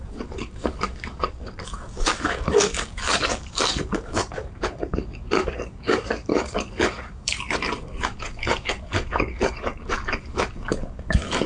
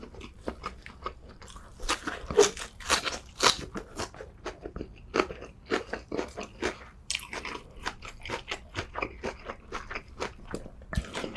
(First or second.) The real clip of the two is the second